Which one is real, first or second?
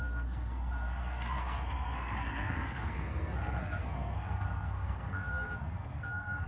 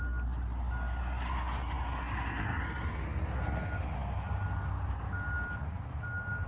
second